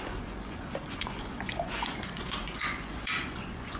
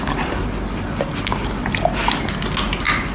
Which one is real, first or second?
second